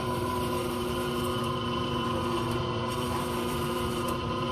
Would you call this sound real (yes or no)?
no